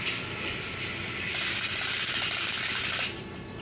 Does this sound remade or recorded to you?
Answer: recorded